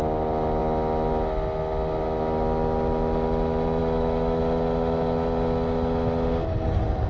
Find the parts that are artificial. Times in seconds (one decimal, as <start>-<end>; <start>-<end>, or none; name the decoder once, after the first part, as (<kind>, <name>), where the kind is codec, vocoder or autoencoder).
3.8-4.4 (autoencoder, DAC-VAE)